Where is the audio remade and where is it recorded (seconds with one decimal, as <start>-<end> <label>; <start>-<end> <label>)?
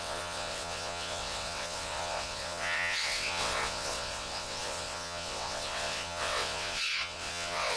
0.0-7.8 remade